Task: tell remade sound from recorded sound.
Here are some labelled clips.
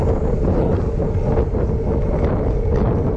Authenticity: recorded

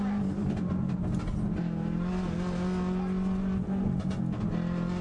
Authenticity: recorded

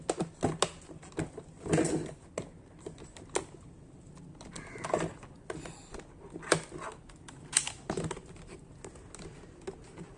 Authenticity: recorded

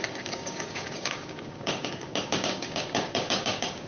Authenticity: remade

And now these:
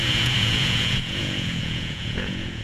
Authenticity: remade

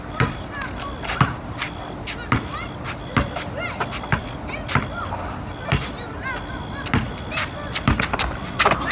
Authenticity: recorded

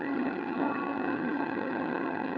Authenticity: remade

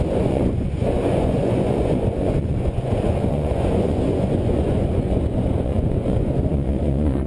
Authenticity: remade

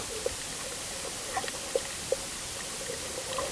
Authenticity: recorded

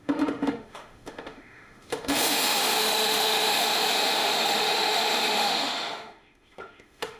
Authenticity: remade